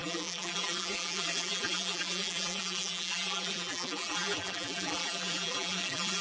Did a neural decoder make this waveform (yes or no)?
yes